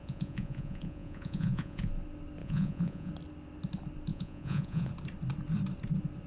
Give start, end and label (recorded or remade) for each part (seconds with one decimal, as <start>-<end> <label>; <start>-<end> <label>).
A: 0.0-1.9 remade; 1.9-2.4 recorded; 2.4-3.1 remade; 3.1-4.1 recorded; 4.1-4.9 remade; 4.9-6.3 recorded